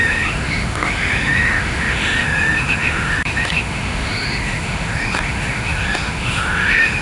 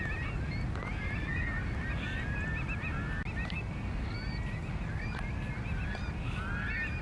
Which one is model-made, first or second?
first